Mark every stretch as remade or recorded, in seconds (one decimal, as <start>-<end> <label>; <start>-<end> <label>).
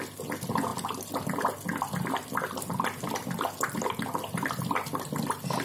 0.0-5.6 recorded